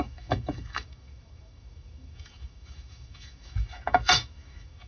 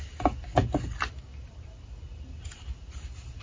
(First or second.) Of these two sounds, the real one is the second